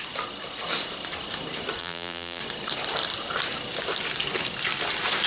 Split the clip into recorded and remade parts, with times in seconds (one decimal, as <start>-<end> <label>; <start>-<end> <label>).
0.0-1.8 recorded; 1.8-2.4 remade; 2.4-5.3 recorded